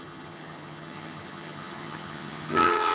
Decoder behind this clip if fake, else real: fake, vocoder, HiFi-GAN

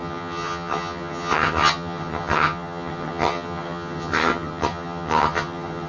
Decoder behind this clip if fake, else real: fake, vocoder, HiFi-GAN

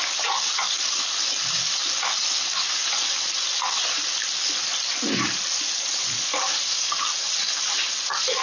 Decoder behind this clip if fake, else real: real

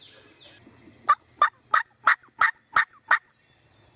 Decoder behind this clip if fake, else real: real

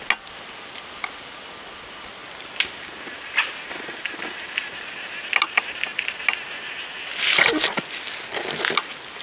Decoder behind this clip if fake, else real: real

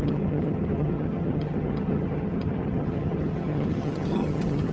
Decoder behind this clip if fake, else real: fake, vocoder, HiFi-GAN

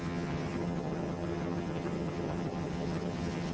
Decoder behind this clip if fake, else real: fake, vocoder, HiFi-GAN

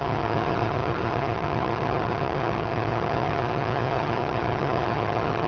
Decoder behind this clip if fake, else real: fake, vocoder, HiFi-GAN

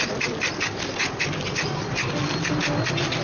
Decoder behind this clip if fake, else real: real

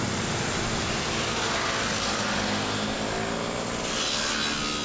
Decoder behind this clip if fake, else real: real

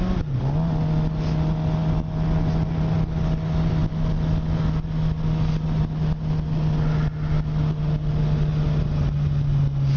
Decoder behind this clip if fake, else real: real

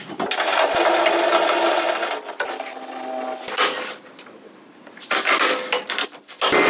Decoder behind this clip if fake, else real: real